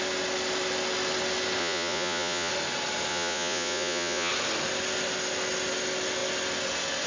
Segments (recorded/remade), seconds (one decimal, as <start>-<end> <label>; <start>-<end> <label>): 0.0-1.6 recorded; 1.6-2.5 remade; 2.5-3.1 recorded; 3.1-4.3 remade; 4.3-7.1 recorded